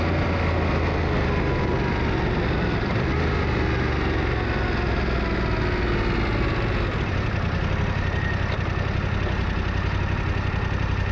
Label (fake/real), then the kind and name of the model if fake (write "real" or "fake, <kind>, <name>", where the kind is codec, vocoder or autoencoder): real